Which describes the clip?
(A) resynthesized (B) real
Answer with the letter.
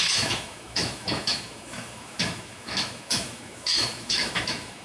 A